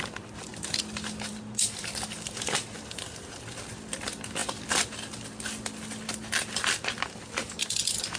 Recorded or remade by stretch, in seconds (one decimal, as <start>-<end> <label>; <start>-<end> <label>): 0.0-8.2 recorded